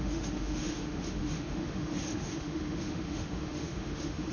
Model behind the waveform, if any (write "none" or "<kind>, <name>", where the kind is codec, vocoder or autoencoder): autoencoder, DAC-VAE